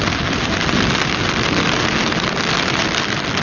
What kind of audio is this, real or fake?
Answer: real